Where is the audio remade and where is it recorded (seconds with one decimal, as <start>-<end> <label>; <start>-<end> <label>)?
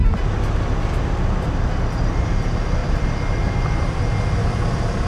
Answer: 0.0-2.8 recorded; 2.8-4.0 remade; 4.0-5.1 recorded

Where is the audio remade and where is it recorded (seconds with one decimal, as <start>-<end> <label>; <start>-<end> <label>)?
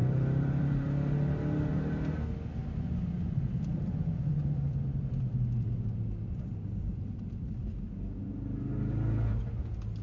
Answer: 0.0-1.4 remade; 1.4-2.6 recorded; 2.6-7.7 remade; 7.7-10.0 recorded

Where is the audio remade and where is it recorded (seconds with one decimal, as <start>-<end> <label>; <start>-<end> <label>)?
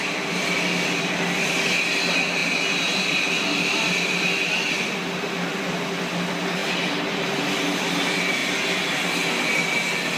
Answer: 0.0-10.2 recorded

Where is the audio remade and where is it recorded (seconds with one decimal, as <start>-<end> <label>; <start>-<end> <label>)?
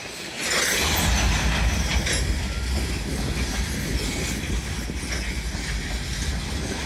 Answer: 0.0-6.9 recorded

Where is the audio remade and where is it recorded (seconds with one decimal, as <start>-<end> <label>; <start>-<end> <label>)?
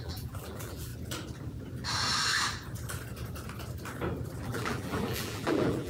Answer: 0.0-0.9 remade; 0.9-4.4 recorded; 4.4-5.9 remade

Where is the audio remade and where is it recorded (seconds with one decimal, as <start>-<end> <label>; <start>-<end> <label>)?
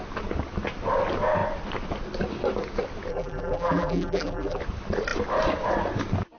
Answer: 0.0-3.1 recorded; 3.1-4.6 remade; 4.6-6.4 recorded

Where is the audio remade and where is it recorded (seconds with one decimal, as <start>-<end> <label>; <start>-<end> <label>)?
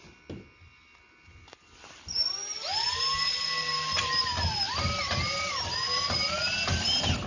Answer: 0.0-7.3 recorded